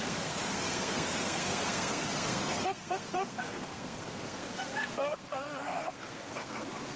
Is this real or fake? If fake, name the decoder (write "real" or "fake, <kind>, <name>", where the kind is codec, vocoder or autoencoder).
fake, codec, SNAC